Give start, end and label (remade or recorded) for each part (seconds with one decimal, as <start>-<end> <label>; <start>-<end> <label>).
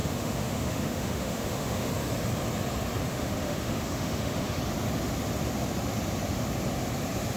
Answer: 0.0-1.9 remade; 1.9-3.0 recorded; 3.0-4.6 remade; 4.6-7.4 recorded